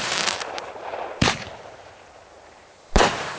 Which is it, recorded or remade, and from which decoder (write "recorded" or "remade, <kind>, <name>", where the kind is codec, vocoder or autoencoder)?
remade, vocoder, BigVGAN v2